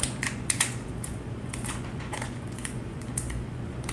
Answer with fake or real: fake